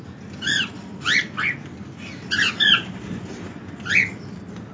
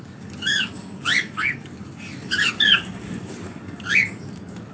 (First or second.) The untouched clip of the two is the first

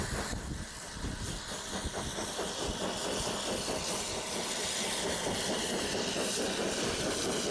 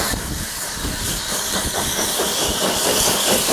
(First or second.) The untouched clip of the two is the first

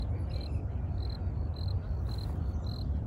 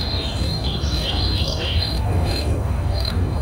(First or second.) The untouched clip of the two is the first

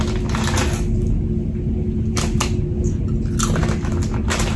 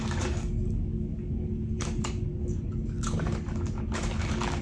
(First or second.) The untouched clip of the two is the first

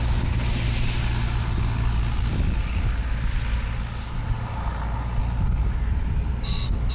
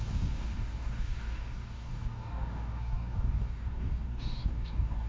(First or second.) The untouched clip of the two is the first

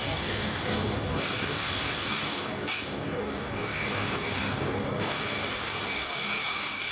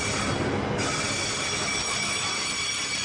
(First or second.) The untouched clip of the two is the second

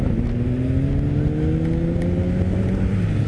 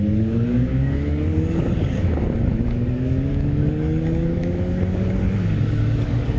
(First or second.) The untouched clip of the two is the first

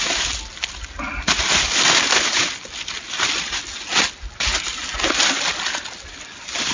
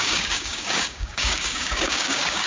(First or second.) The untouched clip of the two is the first